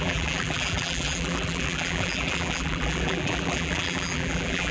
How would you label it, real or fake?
fake